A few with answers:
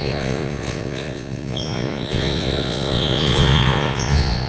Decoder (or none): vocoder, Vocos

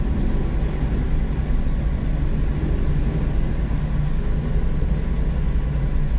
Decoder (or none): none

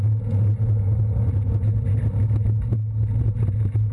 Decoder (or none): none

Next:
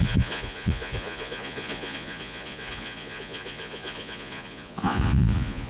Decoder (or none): vocoder, Vocos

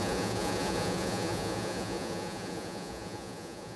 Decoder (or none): vocoder, Vocos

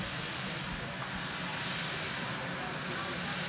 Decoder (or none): none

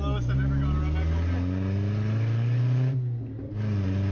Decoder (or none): none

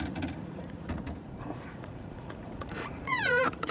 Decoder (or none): vocoder, Vocos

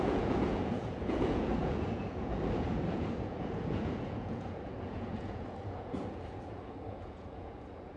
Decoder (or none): vocoder, Vocos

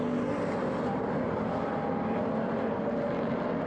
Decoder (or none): none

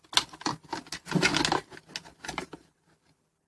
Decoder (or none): none